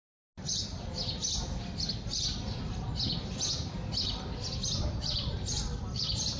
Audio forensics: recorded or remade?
recorded